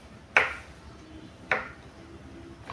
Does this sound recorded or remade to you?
recorded